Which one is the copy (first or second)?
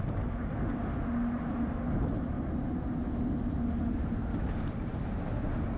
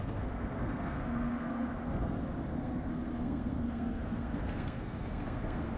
second